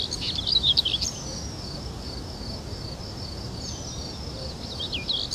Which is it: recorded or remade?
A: recorded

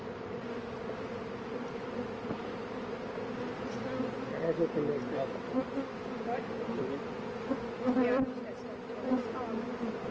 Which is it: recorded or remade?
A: recorded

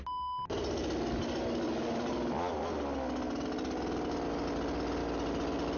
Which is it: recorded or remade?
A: recorded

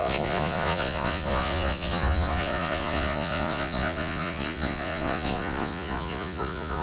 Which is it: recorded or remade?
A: remade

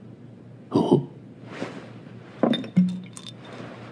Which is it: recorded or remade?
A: recorded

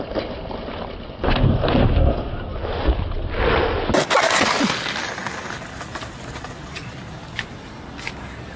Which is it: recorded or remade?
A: recorded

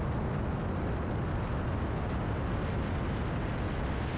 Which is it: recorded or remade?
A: recorded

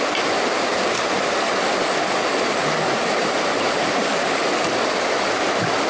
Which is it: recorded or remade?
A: recorded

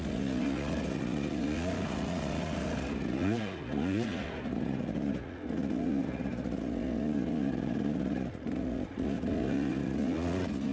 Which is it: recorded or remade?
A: remade